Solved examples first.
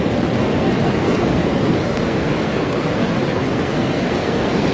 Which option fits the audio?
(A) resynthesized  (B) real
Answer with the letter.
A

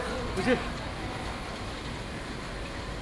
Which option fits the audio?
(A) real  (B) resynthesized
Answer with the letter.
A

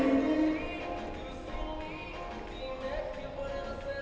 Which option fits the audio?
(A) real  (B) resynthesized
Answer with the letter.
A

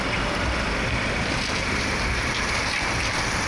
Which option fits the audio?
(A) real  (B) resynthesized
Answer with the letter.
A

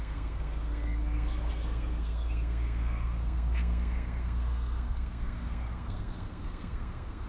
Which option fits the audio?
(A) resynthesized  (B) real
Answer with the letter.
A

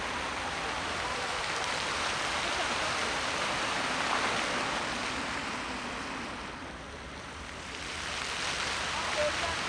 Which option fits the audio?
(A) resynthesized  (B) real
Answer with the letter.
B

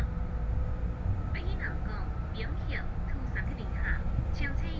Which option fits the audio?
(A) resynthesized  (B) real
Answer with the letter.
B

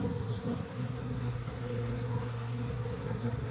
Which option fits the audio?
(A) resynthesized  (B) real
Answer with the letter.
A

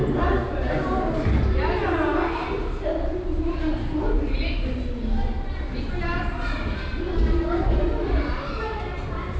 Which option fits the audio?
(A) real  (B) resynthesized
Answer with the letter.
A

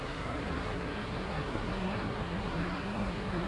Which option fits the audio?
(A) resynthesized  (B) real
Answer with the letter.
A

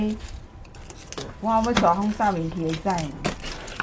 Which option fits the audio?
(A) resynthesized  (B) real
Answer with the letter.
B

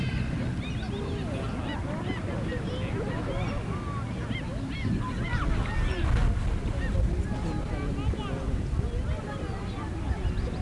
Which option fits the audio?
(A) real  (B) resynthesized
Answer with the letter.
A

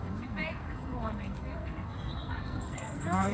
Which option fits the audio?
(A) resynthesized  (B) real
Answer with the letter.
A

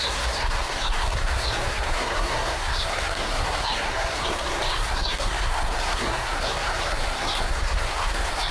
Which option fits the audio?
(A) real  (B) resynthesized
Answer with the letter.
B